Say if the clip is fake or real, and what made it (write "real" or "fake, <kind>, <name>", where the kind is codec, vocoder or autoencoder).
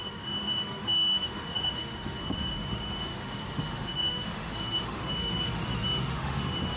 fake, autoencoder, DAC-VAE